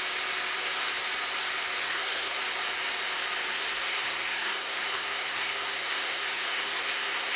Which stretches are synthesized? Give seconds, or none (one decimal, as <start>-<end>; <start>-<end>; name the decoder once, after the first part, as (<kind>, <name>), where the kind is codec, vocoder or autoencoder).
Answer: 1.8-2.4 (codec, SNAC); 3.5-7.4